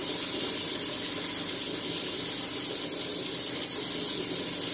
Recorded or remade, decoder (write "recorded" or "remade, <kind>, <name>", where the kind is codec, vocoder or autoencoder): recorded